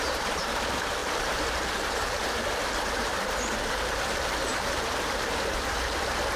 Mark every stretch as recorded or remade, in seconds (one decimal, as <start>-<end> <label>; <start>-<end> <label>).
0.0-6.4 remade